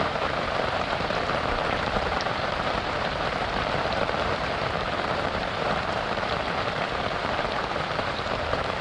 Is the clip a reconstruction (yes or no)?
yes